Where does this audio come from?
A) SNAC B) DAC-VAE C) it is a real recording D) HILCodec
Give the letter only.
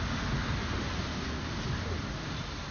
C